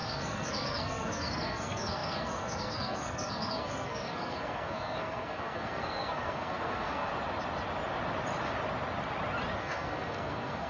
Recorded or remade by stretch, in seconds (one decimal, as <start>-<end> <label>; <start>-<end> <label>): 0.0-7.1 remade; 7.1-9.6 recorded; 9.6-10.7 remade